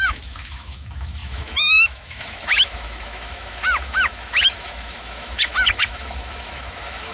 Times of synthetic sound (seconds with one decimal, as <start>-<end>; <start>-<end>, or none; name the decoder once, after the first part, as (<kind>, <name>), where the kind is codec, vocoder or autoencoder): 0.0-7.1 (autoencoder, DAC-VAE)